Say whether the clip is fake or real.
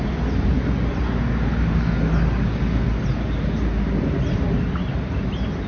real